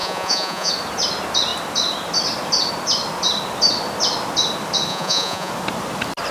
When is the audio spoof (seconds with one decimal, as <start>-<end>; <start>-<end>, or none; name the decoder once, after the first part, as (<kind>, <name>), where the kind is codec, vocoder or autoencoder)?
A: 0.0-0.7 (vocoder, Vocos); 4.9-5.5